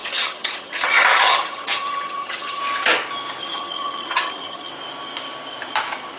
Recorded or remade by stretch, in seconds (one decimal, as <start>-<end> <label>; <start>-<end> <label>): 0.0-2.6 remade; 2.6-3.4 recorded; 3.4-4.7 remade; 4.7-6.2 recorded